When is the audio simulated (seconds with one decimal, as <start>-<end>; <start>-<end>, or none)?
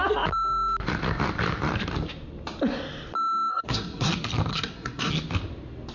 3.5-4.1; 4.5-5.1